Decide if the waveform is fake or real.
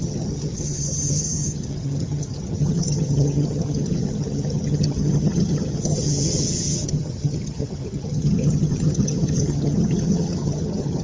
fake